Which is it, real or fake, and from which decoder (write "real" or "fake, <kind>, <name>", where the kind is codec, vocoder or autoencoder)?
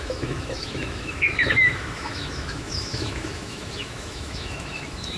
fake, autoencoder, DAC-VAE